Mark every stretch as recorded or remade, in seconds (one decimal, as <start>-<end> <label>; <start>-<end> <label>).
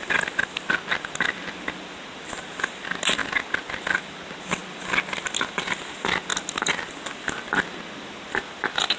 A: 0.0-9.0 recorded